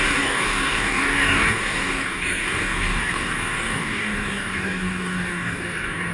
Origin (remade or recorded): remade